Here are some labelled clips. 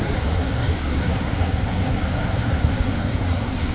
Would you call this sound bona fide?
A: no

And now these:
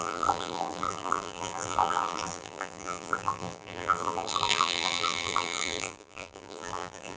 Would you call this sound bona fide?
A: no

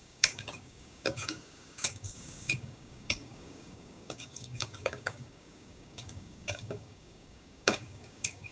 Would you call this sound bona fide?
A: no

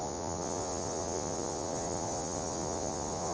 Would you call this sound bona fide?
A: no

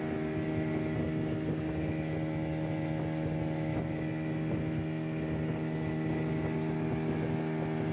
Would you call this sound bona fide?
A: yes